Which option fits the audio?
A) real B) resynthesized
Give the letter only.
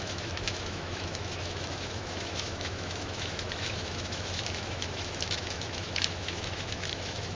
B